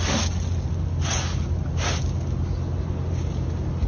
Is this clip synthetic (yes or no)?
no